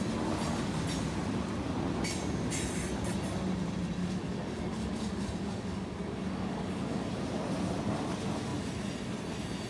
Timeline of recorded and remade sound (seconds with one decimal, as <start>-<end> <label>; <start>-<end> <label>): 0.0-4.0 recorded; 4.0-7.2 remade; 7.2-9.7 recorded